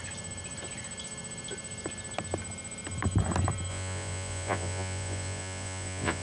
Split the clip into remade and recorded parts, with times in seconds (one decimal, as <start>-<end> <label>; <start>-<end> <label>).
0.0-3.7 recorded; 3.7-6.2 remade